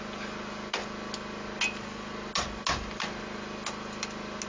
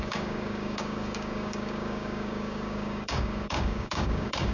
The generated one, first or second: second